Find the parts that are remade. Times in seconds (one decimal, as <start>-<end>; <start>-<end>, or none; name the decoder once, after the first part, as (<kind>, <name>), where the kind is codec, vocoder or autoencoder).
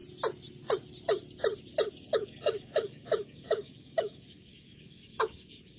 2.1-5.8 (autoencoder, DAC-VAE)